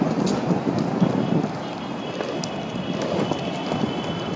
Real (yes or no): yes